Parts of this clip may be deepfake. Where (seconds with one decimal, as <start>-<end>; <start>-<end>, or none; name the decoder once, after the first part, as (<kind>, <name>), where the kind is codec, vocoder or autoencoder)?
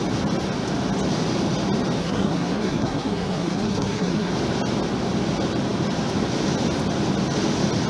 2.0-4.3 (codec, SNAC)